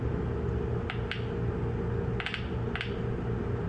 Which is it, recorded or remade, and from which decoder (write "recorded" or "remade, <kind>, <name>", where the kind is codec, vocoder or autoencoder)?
recorded